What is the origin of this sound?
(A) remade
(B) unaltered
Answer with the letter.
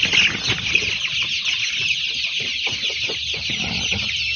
B